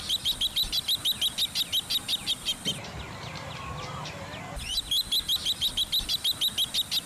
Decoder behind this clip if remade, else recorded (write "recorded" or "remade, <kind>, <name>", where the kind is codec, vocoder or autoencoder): recorded